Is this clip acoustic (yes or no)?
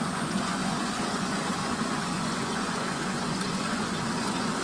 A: no